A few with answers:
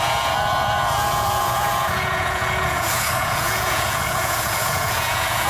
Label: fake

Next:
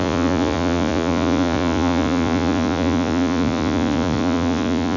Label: fake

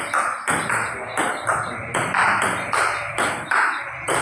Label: real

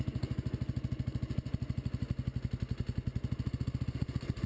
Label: real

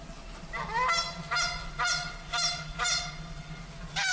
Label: real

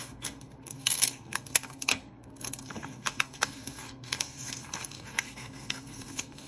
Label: fake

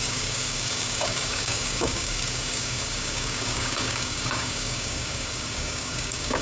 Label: fake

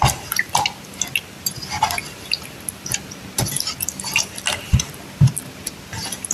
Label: real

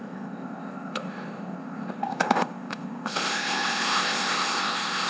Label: fake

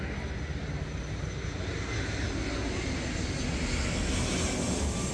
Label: real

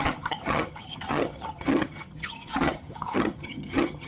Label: fake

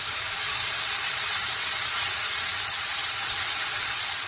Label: fake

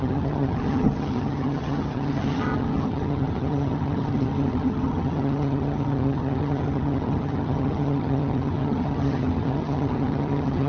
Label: fake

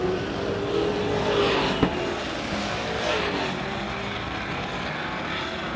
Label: real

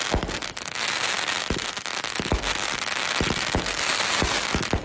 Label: real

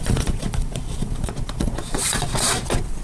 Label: fake